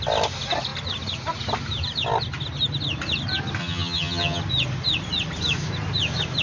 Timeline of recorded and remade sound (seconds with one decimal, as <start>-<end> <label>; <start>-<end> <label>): 0.0-3.6 recorded; 3.6-4.4 remade; 4.4-6.4 recorded